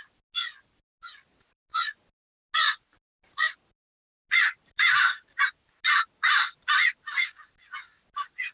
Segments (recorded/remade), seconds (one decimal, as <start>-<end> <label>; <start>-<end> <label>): 0.0-8.5 recorded